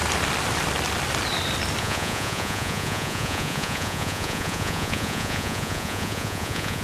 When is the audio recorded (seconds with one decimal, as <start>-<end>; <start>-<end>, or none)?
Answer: 0.0-1.8